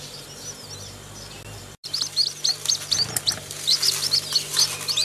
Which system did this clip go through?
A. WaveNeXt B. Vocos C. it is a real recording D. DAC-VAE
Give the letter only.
C